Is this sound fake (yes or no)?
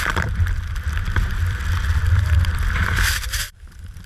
yes